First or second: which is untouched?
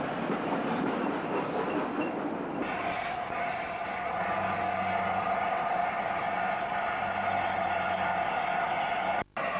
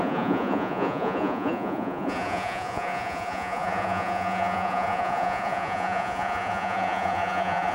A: first